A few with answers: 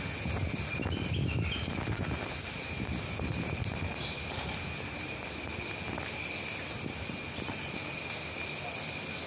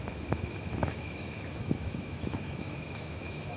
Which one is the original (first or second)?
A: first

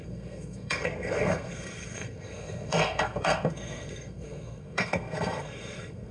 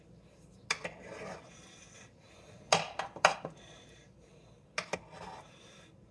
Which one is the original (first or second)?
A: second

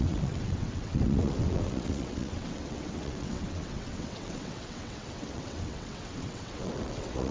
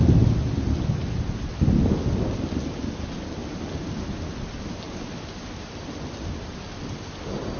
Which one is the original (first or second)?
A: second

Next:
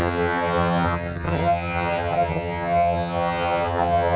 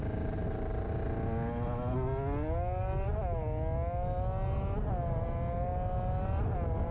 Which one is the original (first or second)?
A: second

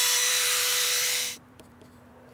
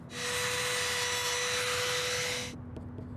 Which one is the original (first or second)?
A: second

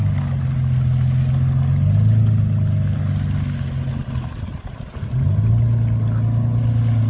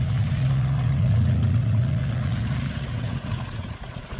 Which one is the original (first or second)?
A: first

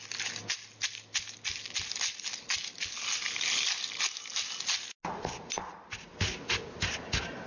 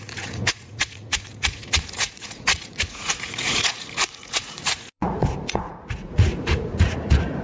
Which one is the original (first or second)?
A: first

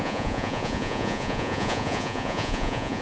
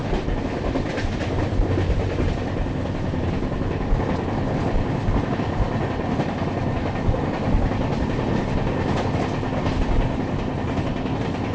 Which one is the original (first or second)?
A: second